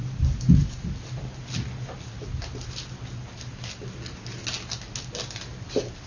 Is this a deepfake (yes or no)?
no